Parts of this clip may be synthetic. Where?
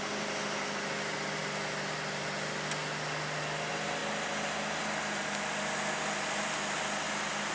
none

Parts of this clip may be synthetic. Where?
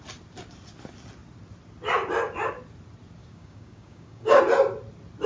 3.2-4.4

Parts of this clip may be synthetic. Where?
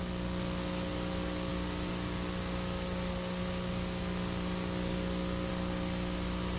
none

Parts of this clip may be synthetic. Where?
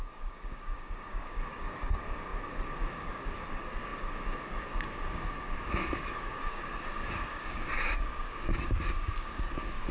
0.0-9.9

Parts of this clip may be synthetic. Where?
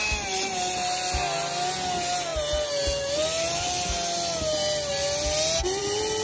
none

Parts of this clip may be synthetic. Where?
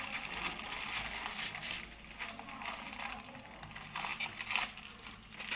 none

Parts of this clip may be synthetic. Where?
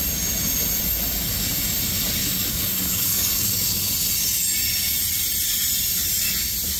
2.2-3.9